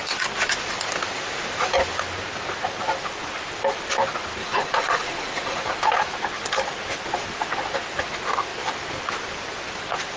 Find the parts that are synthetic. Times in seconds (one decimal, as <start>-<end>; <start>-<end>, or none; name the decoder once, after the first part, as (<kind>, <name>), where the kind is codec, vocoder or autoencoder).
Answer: 4.4-5.6 (vocoder, Vocos)